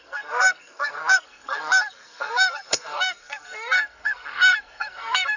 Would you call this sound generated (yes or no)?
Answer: yes